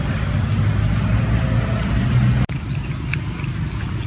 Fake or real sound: real